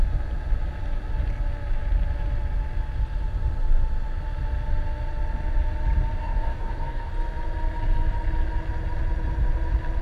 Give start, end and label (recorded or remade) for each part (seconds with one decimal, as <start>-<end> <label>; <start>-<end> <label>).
0.0-6.2 recorded; 6.2-7.1 remade; 7.1-10.0 recorded